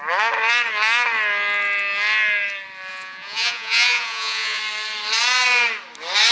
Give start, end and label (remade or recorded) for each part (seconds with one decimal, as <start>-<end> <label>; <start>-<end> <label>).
0.0-2.9 recorded; 2.9-4.6 remade; 4.6-6.3 recorded